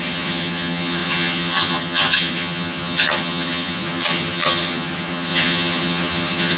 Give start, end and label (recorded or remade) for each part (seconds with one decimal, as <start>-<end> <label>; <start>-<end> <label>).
0.0-6.6 remade

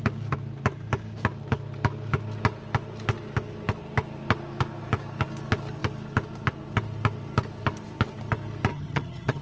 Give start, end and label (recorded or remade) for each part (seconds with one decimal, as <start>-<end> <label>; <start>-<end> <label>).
0.0-8.7 recorded; 8.7-9.4 remade

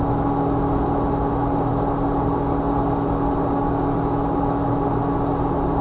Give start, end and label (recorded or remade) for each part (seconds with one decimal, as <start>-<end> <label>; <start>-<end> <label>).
0.0-5.8 recorded

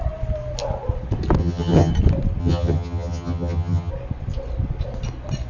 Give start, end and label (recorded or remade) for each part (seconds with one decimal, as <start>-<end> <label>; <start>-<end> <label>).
0.0-1.4 recorded; 1.4-1.9 remade; 1.9-2.4 recorded; 2.4-3.9 remade; 3.9-5.5 recorded

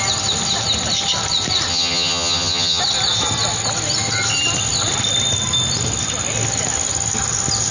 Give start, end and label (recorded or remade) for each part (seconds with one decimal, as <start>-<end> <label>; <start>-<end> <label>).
0.0-1.7 recorded; 1.7-2.8 remade; 2.8-7.7 recorded

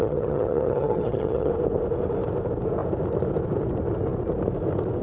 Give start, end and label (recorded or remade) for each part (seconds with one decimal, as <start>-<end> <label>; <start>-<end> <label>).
0.0-1.5 remade; 1.5-5.0 recorded

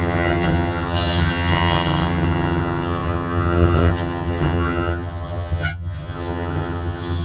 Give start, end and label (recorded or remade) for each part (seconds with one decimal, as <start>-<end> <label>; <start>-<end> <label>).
0.0-7.2 remade

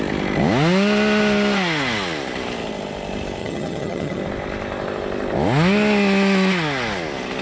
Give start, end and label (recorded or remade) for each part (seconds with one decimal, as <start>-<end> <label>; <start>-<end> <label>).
0.0-3.4 recorded; 3.4-4.2 remade; 4.2-7.4 recorded